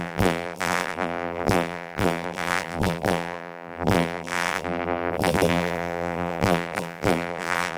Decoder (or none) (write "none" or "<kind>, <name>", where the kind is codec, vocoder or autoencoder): vocoder, BigVGAN v2